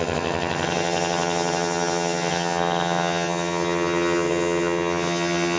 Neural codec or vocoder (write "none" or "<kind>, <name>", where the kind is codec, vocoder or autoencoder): vocoder, HiFi-GAN